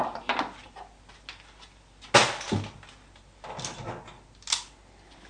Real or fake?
real